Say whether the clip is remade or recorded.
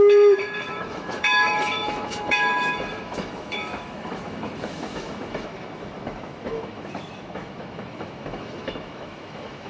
remade